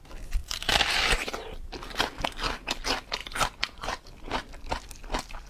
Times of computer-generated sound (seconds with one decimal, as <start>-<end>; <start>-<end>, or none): 0.4-2.0; 3.2-4.7